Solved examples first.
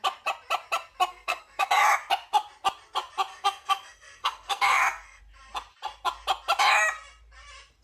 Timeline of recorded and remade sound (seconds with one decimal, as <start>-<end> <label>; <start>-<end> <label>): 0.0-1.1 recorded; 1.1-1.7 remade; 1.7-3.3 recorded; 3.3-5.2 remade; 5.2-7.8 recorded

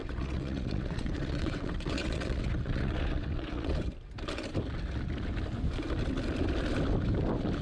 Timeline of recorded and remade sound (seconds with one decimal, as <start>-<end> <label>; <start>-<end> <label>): 0.0-3.7 remade; 3.7-7.6 recorded

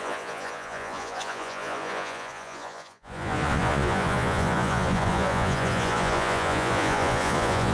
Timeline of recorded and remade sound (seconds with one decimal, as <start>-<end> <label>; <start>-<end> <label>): 0.0-7.7 remade

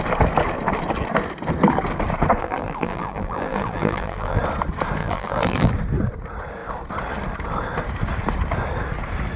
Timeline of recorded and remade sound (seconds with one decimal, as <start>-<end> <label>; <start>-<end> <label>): 0.0-2.4 recorded; 2.4-4.4 remade; 4.4-5.0 recorded; 5.0-5.7 remade; 5.7-9.4 recorded